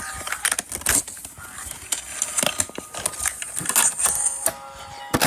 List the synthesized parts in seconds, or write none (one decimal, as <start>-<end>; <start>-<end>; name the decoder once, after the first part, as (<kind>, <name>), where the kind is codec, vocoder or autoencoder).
none

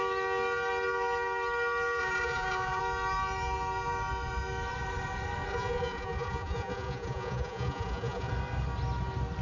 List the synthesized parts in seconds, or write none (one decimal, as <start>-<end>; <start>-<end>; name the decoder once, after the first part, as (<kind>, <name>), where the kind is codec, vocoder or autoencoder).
2.0-2.8 (vocoder, Vocos); 5.5-8.3

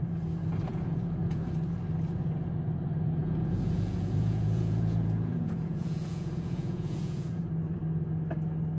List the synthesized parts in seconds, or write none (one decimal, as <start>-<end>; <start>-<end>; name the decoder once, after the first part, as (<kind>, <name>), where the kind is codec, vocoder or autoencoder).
0.7-1.4 (vocoder, Vocos); 3.2-7.4

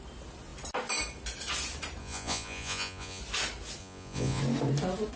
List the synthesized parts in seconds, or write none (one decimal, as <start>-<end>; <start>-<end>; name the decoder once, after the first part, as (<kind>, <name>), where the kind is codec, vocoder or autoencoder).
2.0-3.2 (vocoder, Vocos); 3.8-4.4